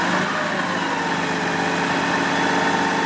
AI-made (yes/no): no